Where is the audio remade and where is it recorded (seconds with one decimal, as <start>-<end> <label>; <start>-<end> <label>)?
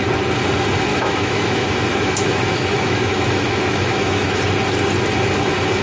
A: 0.0-0.9 recorded; 0.9-4.4 remade; 4.4-5.8 recorded